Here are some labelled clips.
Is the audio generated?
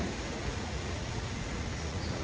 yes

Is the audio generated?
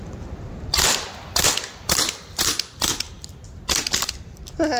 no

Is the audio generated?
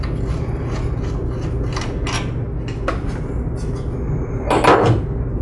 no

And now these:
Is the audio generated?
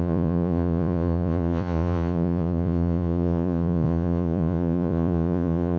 yes